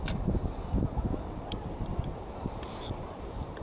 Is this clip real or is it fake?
fake